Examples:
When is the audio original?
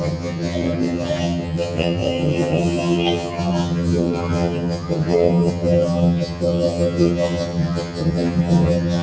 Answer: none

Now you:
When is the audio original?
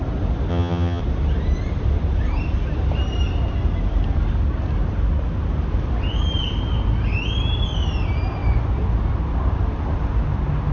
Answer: 0.0-0.5; 1.0-10.7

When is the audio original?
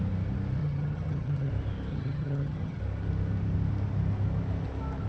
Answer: 0.0-0.6; 1.5-1.9; 2.8-5.1